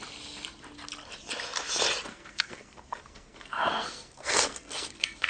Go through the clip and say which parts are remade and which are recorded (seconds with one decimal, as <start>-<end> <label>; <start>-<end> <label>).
0.0-2.1 recorded; 2.1-5.3 remade